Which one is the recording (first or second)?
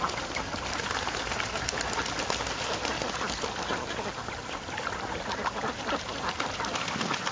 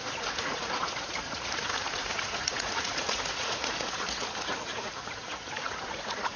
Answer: first